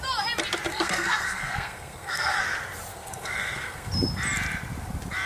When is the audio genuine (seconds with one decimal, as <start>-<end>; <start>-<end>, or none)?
0.0-0.7; 2.4-2.9; 3.9-5.3